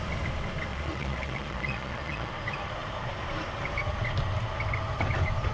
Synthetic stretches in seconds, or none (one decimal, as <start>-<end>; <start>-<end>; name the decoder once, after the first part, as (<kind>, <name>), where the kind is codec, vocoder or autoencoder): 0.7-2.3 (vocoder, Vocos)